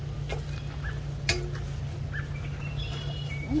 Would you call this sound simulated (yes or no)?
no